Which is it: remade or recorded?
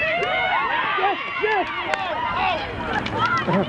recorded